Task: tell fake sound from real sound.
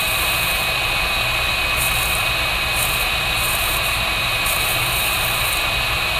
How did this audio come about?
fake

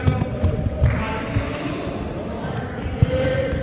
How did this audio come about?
real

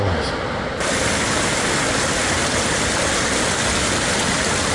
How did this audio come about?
real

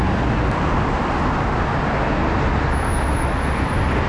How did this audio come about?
real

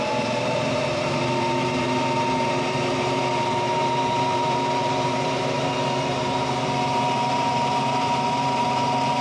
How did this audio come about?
fake